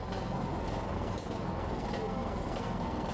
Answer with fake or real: fake